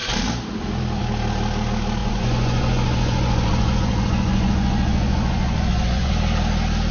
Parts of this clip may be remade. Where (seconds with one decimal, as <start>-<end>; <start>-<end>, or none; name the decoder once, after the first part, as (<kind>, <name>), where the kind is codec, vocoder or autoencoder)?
2.0-6.1 (vocoder, Vocos)